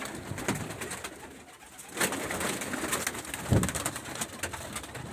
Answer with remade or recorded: recorded